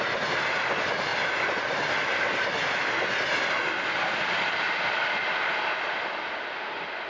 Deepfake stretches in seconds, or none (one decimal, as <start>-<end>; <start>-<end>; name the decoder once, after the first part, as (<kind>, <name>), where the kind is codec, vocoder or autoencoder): none

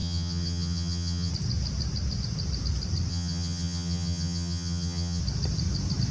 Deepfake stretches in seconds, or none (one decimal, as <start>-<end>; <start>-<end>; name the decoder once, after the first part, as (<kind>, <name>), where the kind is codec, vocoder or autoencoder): 0.0-1.3 (vocoder, HiFi-GAN); 3.1-5.2

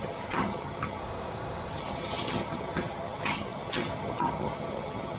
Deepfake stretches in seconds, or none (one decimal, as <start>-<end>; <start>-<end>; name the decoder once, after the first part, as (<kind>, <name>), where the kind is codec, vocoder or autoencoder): 0.0-1.0 (vocoder, HiFi-GAN); 1.7-5.2